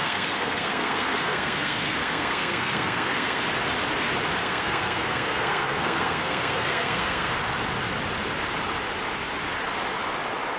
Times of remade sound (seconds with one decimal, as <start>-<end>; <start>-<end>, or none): 0.0-3.4; 4.4-7.3

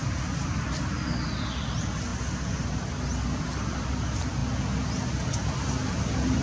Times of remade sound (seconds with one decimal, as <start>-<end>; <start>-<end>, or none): 0.0-1.7; 2.1-3.9

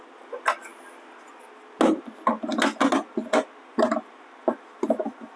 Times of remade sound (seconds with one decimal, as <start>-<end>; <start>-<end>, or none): none

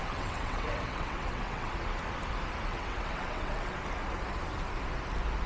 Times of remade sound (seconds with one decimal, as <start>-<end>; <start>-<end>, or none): 0.0-1.7; 2.7-3.7

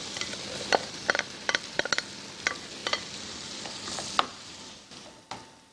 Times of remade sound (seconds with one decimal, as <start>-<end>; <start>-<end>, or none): 2.8-3.6

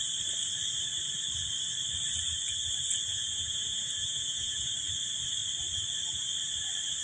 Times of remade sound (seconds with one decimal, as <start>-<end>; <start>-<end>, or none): 3.1-4.7